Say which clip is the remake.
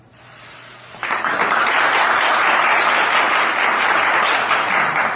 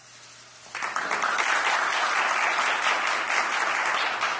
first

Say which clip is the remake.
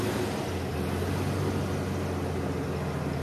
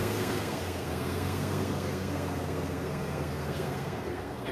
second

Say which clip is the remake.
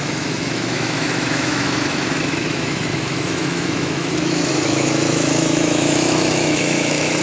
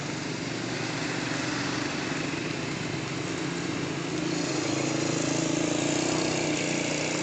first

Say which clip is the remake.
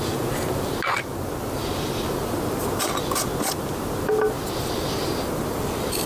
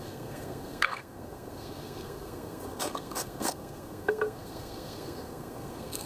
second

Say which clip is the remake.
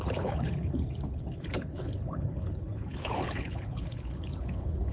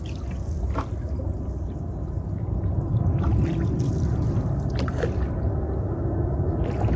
first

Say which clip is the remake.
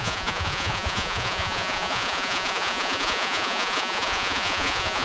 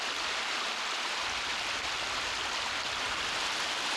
first